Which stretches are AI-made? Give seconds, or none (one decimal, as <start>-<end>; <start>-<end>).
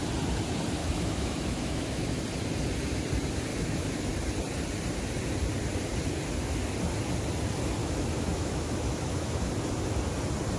0.8-2.2; 3.5-4.1; 7.8-9.5